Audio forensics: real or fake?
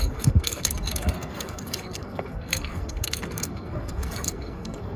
fake